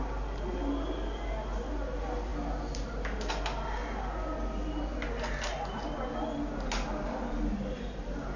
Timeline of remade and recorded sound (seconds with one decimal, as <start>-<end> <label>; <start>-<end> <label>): 0.0-8.4 recorded